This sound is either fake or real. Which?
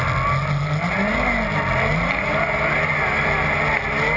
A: real